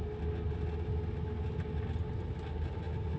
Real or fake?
real